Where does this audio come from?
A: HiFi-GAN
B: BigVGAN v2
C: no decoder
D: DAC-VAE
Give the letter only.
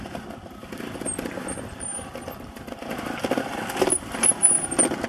C